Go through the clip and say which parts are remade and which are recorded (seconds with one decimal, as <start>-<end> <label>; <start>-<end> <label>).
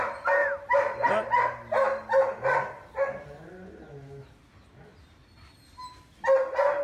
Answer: 0.0-0.4 recorded; 0.4-1.1 remade; 1.1-6.8 recorded